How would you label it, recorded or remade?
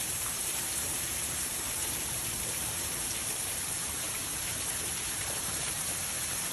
remade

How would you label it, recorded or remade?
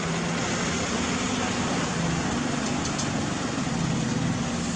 recorded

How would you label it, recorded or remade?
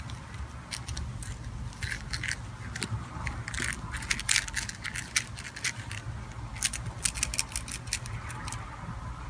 recorded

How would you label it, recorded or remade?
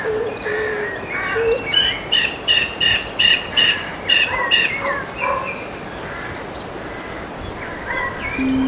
recorded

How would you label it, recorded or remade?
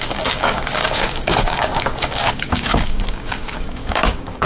remade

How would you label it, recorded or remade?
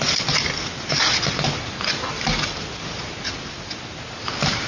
recorded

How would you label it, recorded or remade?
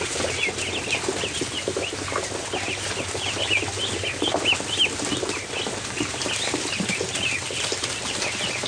recorded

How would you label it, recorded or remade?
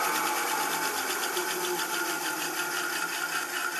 recorded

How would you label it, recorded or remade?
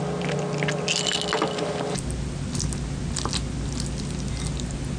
recorded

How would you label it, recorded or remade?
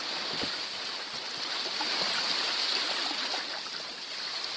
recorded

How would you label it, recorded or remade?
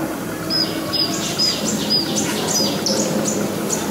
recorded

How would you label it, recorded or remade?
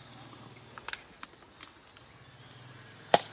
recorded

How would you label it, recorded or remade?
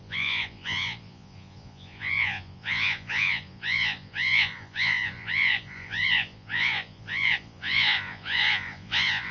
remade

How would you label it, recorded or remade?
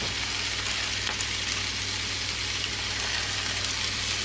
recorded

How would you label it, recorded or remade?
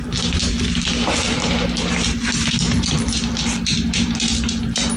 recorded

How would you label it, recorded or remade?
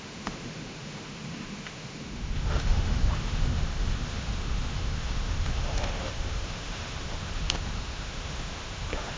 remade